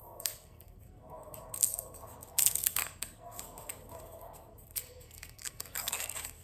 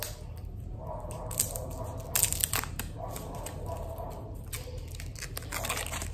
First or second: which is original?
second